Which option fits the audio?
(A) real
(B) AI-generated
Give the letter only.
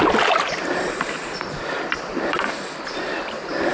A